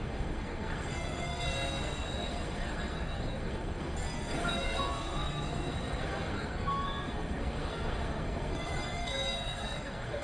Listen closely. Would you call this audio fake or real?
fake